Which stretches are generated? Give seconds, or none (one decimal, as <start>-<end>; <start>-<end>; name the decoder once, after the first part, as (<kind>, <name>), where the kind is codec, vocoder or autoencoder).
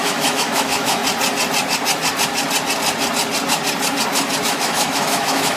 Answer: 0.0-1.0 (autoencoder, DAC-VAE); 4.4-5.6